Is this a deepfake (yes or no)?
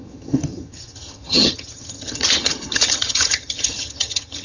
yes